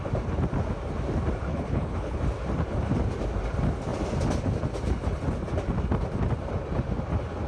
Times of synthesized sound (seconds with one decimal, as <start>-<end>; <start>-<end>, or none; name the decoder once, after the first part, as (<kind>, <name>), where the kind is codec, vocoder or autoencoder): 1.5-2.2 (codec, HILCodec)